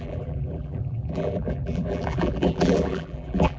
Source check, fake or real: fake